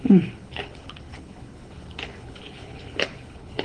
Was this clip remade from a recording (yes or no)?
yes